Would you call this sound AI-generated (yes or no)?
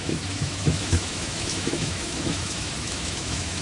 yes